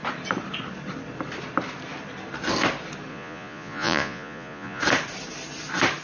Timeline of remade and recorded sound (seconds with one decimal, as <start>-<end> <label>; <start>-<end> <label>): 0.0-3.1 recorded; 3.1-4.8 remade; 4.8-6.0 recorded